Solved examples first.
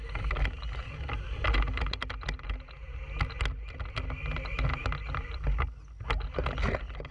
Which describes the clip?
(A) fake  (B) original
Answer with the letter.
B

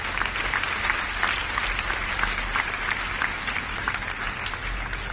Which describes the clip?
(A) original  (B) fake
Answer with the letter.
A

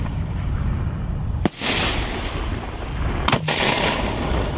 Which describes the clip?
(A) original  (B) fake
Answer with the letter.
A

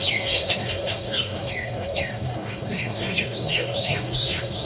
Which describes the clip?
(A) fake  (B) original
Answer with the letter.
A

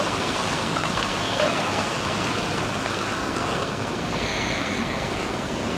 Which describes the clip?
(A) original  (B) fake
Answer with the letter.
B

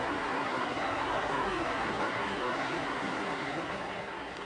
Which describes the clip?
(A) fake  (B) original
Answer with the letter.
A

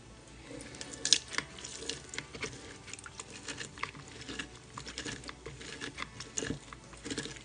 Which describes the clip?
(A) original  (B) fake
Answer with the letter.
A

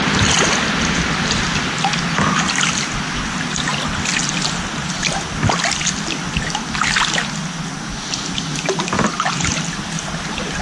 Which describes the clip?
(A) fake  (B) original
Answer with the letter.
B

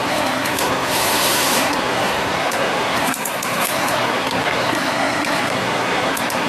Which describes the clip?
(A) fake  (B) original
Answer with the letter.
A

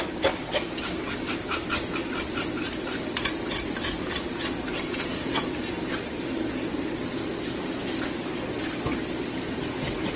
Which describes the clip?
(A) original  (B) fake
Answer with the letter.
A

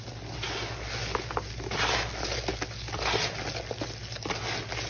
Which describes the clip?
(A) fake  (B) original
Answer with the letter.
B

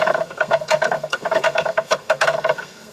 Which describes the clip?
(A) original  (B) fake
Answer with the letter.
B